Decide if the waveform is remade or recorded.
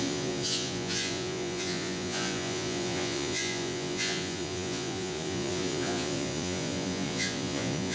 remade